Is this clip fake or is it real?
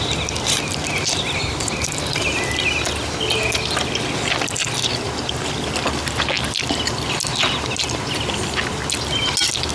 real